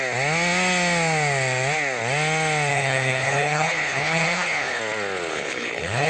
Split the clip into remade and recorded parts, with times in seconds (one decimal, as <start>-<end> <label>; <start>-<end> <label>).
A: 0.0-2.7 recorded; 2.7-4.8 remade; 4.8-5.3 recorded; 5.3-6.1 remade